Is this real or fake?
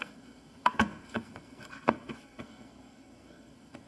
fake